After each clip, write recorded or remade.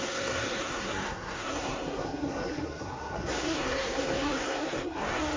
remade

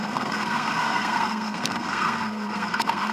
remade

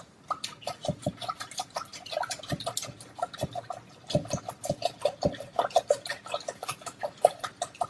recorded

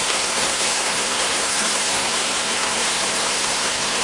remade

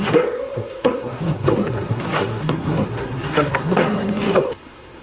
remade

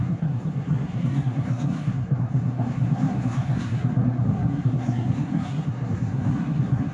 remade